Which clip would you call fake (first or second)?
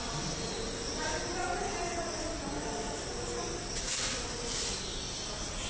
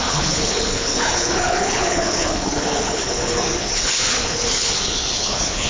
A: second